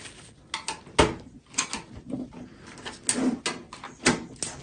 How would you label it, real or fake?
real